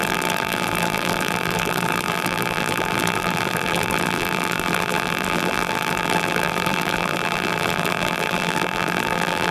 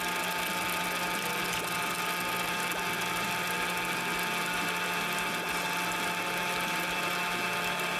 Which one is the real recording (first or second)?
second